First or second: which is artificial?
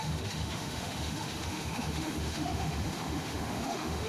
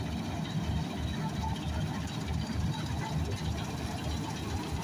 first